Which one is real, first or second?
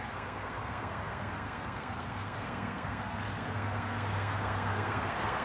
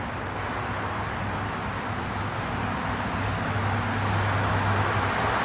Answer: second